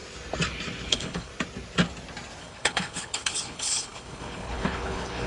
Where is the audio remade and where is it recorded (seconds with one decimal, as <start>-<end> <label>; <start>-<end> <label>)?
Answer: 0.0-0.9 recorded; 0.9-1.3 remade; 1.3-2.4 recorded; 2.4-5.3 remade